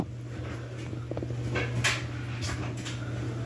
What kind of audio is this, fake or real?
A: real